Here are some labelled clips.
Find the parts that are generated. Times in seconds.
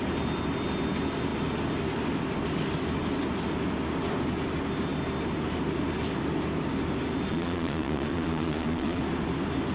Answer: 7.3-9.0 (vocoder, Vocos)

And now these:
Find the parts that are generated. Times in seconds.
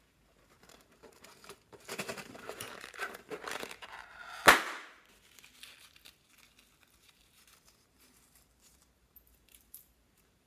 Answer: 0.0-4.2 (vocoder, BigVGAN v2); 7.0-10.5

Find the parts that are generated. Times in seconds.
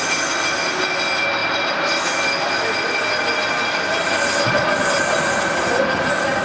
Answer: none